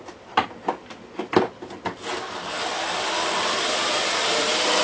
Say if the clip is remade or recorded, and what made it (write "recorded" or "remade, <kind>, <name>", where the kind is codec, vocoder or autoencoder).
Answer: recorded